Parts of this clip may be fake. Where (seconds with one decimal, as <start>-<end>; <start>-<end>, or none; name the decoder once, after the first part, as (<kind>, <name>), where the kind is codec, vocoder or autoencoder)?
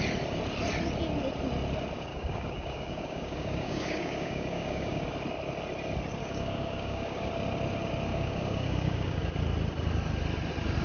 2.1-5.0 (codec, DAC); 6.2-7.3; 8.1-9.3